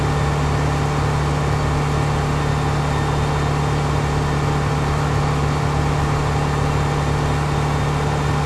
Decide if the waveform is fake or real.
real